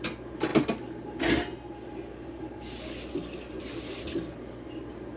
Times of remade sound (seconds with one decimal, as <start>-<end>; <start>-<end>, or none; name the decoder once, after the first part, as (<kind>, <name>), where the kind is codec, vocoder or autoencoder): none